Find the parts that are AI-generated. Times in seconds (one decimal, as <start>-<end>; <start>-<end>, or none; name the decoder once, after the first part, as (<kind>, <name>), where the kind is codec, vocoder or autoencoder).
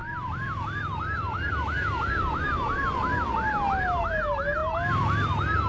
none